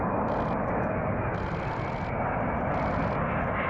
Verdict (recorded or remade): recorded